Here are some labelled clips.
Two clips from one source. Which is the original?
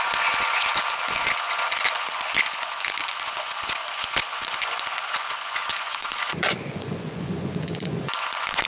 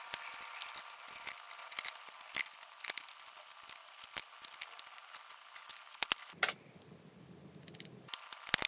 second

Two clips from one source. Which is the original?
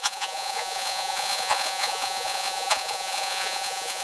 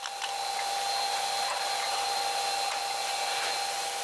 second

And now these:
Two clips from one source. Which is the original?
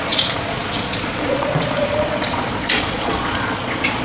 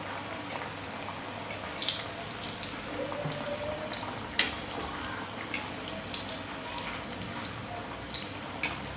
second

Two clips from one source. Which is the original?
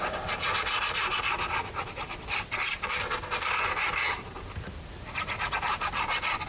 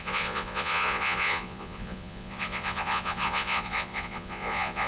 first